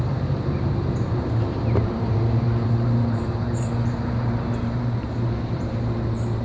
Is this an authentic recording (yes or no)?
no